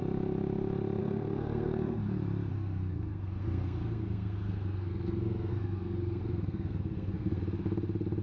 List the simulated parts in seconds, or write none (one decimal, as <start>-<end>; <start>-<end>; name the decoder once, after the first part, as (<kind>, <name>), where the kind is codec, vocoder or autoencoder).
1.0-2.0 (codec, SNAC); 2.5-7.4